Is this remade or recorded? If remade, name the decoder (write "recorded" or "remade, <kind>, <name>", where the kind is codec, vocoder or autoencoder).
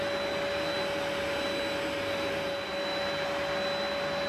recorded